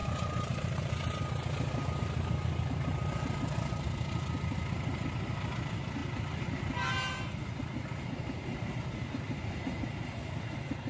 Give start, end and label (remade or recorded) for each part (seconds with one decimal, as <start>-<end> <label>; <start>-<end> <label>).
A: 0.0-1.2 remade; 1.2-10.9 recorded